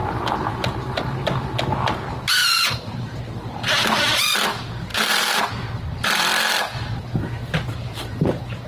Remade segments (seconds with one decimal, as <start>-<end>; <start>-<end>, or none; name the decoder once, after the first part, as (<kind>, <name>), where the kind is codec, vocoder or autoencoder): 0.0-1.0 (vocoder, BigVGAN v2); 2.4-3.2; 4.9-5.5